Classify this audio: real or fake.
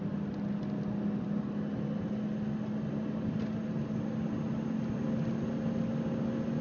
real